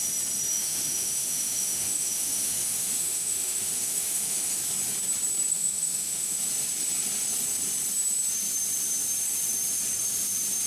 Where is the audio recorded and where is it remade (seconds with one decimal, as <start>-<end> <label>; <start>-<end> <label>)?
0.0-0.5 recorded; 0.5-4.6 remade; 4.6-5.5 recorded; 5.5-6.4 remade; 6.4-10.7 recorded